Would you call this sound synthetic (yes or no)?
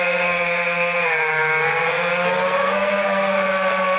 yes